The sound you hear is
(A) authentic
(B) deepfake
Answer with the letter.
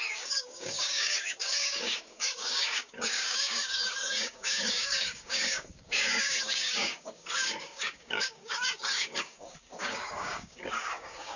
B